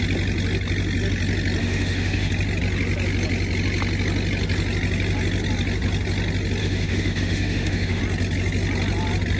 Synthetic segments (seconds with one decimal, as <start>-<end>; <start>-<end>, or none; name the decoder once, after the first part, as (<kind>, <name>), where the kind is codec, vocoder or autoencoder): 1.6-2.3 (autoencoder, DAC-VAE); 6.6-8.0